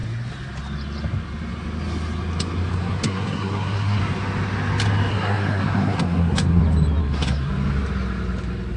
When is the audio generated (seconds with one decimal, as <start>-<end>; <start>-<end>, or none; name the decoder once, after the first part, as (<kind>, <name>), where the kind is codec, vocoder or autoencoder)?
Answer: 2.7-4.0 (codec, SNAC); 5.1-6.6; 7.0-7.5